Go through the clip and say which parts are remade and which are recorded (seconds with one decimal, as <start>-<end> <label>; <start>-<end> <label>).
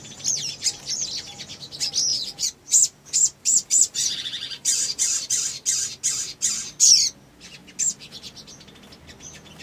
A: 0.0-2.1 recorded; 2.1-5.3 remade; 5.3-9.6 recorded